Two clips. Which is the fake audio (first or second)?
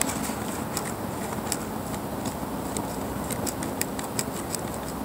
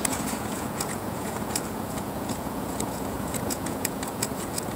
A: second